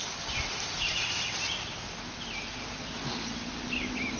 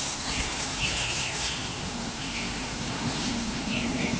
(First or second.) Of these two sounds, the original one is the first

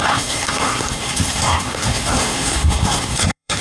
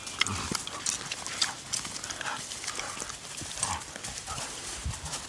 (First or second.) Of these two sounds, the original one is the second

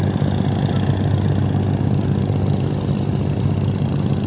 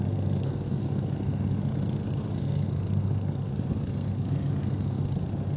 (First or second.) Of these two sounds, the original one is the first